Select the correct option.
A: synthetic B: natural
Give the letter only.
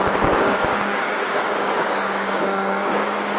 A